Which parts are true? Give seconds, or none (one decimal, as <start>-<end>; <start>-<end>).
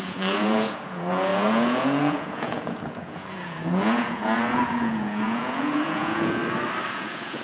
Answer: 6.4-6.9